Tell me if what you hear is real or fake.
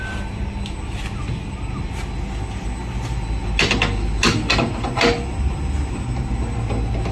real